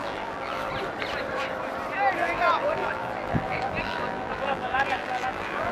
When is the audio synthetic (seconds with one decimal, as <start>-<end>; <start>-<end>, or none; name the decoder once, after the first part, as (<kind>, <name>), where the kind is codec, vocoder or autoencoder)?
0.0-0.7 (vocoder, BigVGAN v2); 2.2-5.7